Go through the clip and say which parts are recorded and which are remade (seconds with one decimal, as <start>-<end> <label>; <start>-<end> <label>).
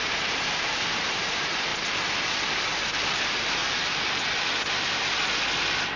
0.0-1.7 remade; 1.7-3.2 recorded; 3.2-3.6 remade; 3.6-6.0 recorded